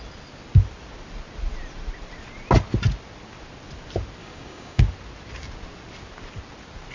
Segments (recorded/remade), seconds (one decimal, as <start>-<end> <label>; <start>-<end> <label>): 0.0-4.2 recorded; 4.2-4.8 remade; 4.8-6.9 recorded